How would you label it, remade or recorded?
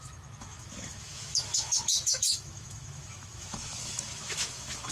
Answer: remade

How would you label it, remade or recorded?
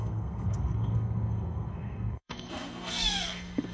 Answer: remade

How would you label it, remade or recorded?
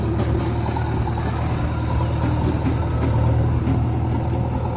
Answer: recorded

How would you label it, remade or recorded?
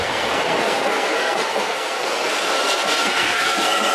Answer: remade